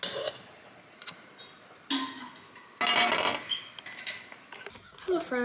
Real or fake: real